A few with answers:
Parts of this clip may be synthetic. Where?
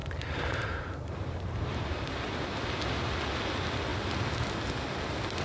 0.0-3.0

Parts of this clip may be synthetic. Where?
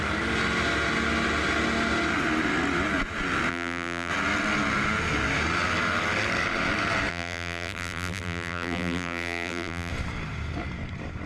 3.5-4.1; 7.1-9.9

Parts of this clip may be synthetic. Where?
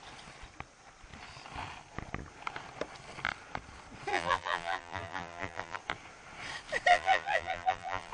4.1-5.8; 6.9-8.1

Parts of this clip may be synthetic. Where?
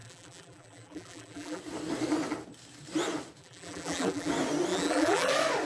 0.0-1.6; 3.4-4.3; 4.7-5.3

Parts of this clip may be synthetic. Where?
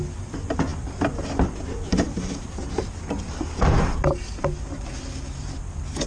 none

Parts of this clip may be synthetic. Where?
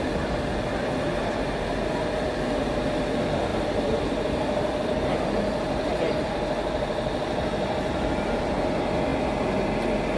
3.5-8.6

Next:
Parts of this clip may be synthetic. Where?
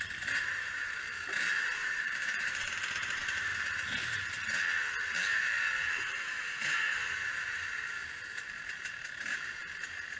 0.0-3.5; 5.4-10.2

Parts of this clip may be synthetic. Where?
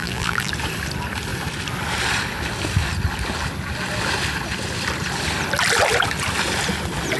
0.0-0.5